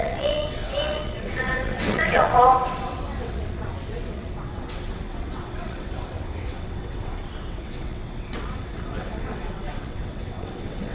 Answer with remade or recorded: remade